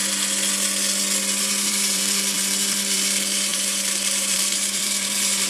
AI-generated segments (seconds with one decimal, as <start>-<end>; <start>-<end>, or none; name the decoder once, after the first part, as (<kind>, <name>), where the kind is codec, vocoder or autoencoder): 1.4-5.5 (vocoder, BigVGAN v2)